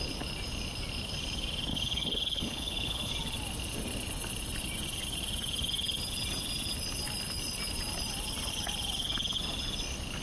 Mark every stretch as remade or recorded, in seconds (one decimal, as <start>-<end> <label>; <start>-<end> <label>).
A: 0.0-1.7 recorded; 1.7-3.1 remade; 3.1-10.2 recorded